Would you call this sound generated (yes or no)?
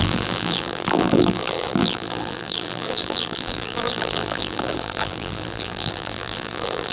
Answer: yes